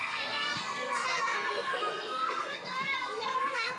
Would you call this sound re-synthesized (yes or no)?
yes